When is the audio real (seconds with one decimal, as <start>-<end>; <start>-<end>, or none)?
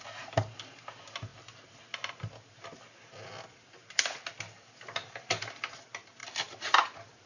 0.0-6.2